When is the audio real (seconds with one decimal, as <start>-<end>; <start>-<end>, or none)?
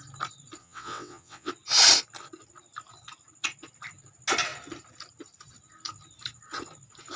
0.0-0.6; 1.5-7.2